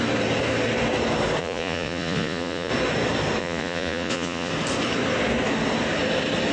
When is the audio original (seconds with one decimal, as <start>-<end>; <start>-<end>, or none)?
0.0-1.4; 2.7-3.4; 4.5-6.5